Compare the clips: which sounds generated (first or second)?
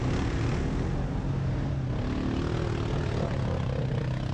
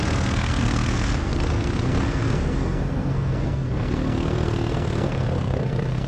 second